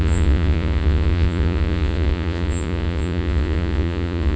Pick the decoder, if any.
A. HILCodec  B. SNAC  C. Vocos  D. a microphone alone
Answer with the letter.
C